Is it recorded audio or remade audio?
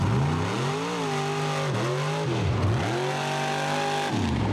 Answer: recorded